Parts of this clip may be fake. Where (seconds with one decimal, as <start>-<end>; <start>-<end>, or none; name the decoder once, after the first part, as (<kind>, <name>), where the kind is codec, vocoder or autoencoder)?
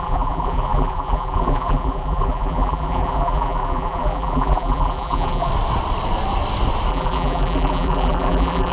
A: 0.0-5.5 (vocoder, BigVGAN v2); 6.9-8.7